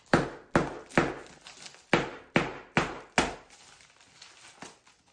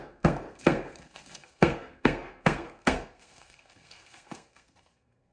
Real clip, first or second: first